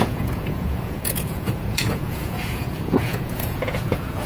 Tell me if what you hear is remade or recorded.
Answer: remade